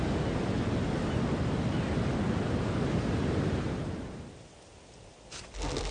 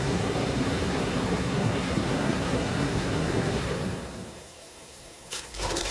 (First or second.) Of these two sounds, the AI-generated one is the second